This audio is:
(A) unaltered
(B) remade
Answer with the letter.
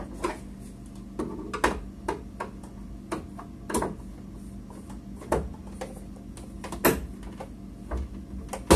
A